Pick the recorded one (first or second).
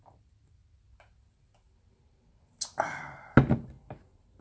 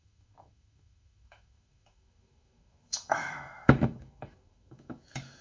first